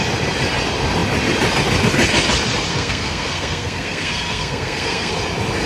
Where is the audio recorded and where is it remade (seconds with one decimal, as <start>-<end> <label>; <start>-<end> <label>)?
0.0-2.7 recorded; 2.7-5.1 remade; 5.1-5.7 recorded